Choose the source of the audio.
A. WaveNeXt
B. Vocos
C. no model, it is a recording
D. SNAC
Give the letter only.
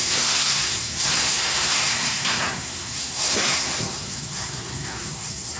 D